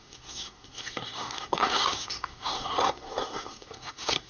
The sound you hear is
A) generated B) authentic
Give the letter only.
A